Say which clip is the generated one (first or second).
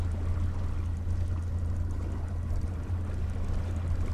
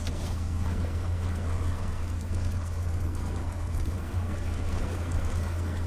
second